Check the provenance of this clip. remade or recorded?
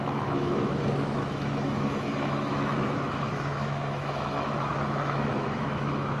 remade